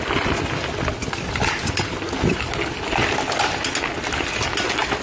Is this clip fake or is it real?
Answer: real